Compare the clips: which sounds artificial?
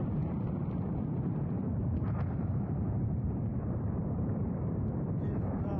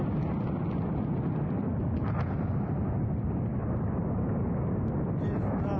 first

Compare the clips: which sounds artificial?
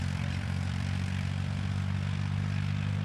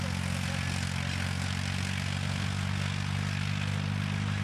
first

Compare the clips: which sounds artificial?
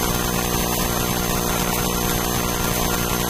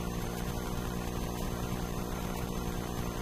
second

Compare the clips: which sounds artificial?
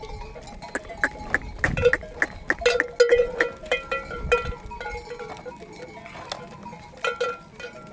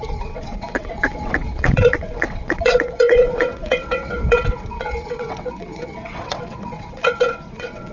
second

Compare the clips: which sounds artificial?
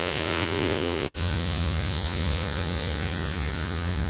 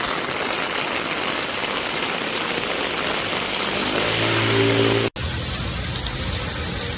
first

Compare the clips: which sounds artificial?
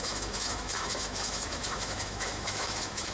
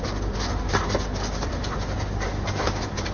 first